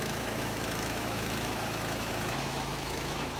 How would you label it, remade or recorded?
remade